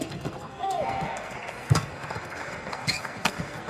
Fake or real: fake